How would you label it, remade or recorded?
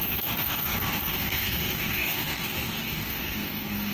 remade